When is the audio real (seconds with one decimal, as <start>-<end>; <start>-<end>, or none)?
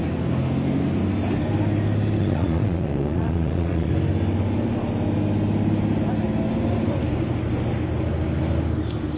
0.0-2.2; 3.9-9.2